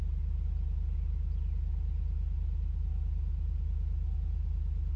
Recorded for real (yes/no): yes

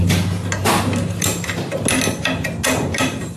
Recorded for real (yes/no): yes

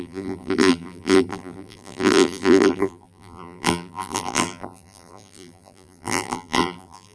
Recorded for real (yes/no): no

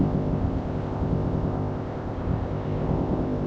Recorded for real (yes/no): no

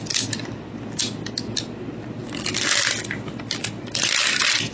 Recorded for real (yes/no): yes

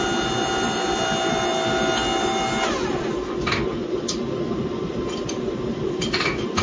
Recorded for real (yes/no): yes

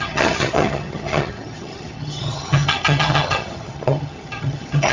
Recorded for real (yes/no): no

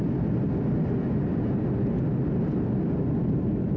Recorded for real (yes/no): yes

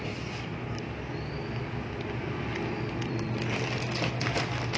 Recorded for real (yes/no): yes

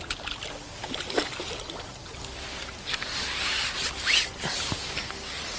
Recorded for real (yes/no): yes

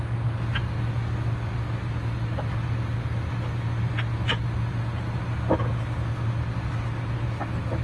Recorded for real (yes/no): yes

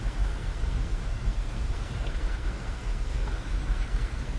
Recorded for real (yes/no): no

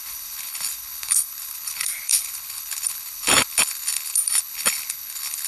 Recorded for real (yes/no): no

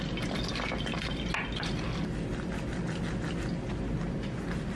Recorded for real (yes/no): yes